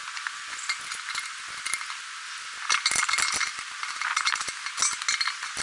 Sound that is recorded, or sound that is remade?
recorded